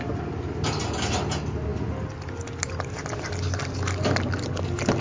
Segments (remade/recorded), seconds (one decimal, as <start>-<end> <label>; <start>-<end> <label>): 0.0-5.0 recorded